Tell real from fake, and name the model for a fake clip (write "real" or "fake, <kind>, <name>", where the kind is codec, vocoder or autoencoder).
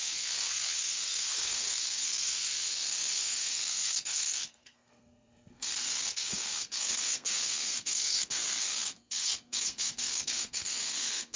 fake, codec, SNAC